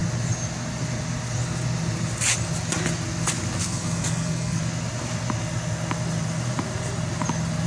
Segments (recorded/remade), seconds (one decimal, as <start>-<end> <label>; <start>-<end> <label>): 0.0-3.6 recorded; 3.6-4.6 remade; 4.6-7.7 recorded